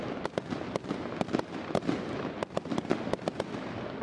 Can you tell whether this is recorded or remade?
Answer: recorded